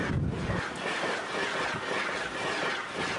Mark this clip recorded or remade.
recorded